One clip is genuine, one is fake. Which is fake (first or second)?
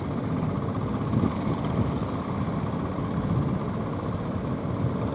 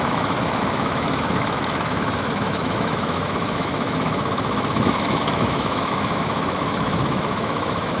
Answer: second